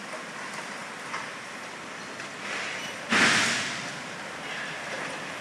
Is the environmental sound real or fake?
real